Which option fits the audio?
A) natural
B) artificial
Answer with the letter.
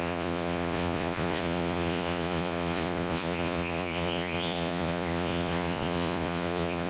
B